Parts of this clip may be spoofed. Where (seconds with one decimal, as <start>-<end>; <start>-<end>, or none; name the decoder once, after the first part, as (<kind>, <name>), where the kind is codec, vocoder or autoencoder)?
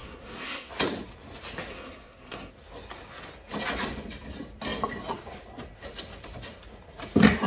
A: 0.0-0.7 (codec, SNAC); 1.7-2.5